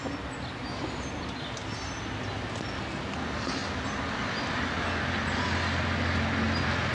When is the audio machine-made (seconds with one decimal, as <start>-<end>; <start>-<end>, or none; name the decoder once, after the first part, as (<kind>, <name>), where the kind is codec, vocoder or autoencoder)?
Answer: none

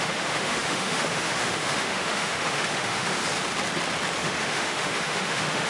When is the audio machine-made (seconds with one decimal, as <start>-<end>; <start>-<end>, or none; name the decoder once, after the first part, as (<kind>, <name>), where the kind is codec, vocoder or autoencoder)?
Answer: 0.0-3.2 (autoencoder, DAC-VAE); 4.2-5.7

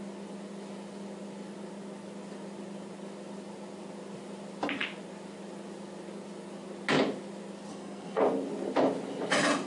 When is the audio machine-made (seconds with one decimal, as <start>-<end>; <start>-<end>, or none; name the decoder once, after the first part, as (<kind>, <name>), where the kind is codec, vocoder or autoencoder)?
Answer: 7.7-8.2 (codec, SNAC)

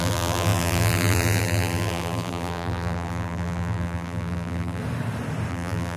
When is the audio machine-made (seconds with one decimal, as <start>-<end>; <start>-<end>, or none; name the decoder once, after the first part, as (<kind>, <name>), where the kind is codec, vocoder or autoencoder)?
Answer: 0.0-4.8 (vocoder, BigVGAN v2); 5.5-6.0